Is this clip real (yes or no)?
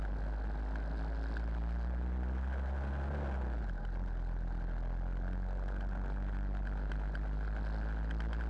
yes